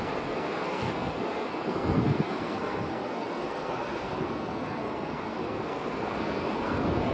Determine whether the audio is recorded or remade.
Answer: remade